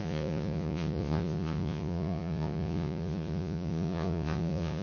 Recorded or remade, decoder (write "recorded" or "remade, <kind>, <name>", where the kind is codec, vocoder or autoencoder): remade, vocoder, Vocos